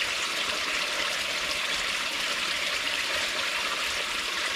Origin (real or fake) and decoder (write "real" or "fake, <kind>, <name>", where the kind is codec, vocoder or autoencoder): fake, vocoder, BigVGAN v2